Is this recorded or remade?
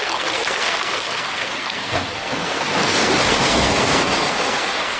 remade